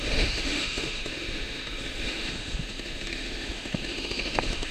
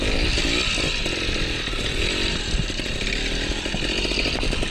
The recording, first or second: second